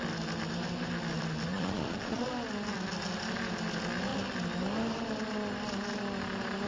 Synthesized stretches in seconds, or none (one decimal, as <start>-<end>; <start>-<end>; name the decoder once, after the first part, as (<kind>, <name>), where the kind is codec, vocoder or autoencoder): 1.5-2.3 (vocoder, Vocos)